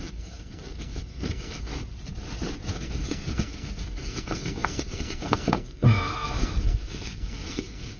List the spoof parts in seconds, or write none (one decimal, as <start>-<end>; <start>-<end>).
0.0-1.7; 2.7-8.0